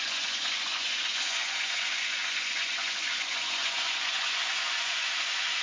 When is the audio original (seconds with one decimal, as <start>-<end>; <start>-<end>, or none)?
none